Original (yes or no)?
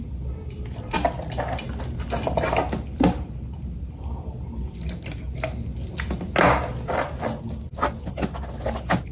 yes